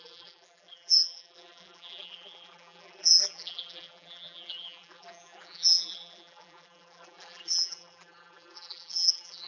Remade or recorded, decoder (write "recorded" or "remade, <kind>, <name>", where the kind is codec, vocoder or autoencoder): remade, vocoder, BigVGAN v2